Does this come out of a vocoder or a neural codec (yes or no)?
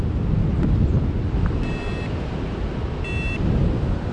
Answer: no